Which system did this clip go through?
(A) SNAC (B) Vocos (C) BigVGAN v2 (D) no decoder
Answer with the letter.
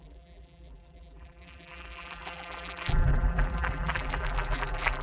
C